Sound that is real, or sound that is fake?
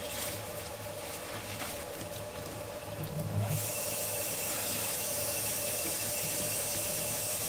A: fake